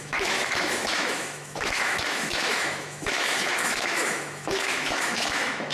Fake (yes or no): yes